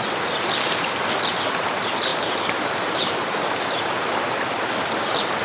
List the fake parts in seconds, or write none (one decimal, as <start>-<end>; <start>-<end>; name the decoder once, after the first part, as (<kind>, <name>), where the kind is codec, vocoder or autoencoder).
2.1-4.0 (vocoder, BigVGAN v2)